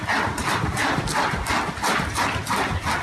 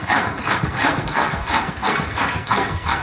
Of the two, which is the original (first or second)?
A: first